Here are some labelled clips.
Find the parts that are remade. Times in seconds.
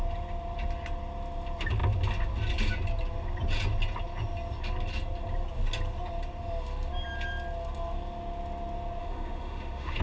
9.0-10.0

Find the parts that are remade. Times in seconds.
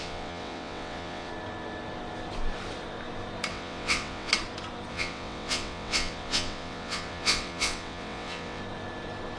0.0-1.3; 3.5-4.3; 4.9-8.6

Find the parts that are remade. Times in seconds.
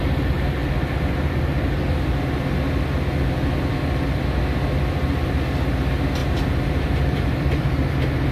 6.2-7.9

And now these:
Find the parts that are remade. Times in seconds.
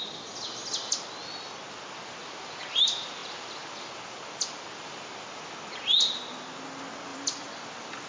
7.1-8.1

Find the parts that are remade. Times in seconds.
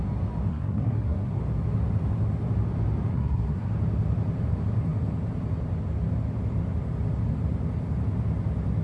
0.5-1.4; 3.1-3.7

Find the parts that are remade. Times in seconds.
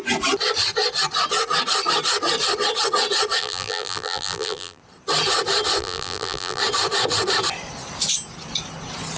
3.4-4.8; 5.8-6.6